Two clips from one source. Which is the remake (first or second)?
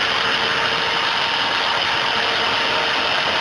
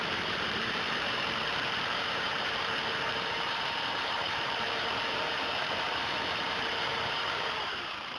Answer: second